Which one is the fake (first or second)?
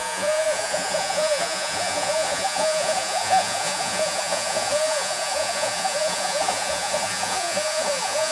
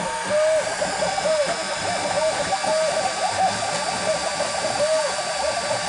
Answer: first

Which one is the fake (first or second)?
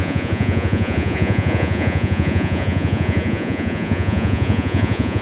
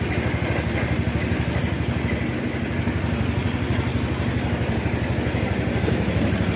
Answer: first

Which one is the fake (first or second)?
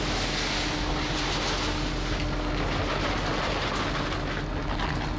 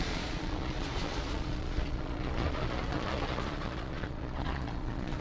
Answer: second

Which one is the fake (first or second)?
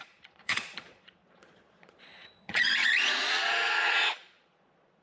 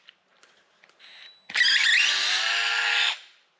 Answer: first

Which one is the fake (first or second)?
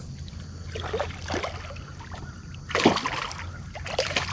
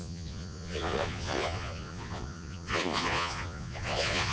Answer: second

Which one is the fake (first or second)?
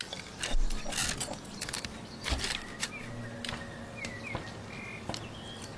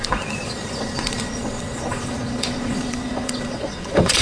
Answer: second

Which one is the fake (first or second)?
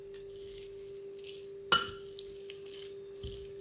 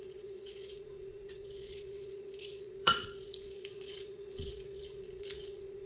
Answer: second